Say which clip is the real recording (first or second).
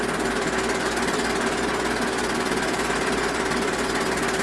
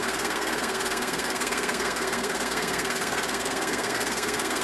first